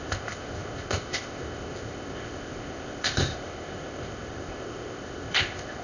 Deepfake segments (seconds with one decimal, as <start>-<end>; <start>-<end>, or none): 0.0-5.8